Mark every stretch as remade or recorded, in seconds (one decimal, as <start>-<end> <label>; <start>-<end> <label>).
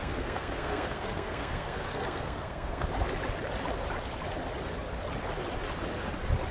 0.0-2.9 remade; 2.9-6.5 recorded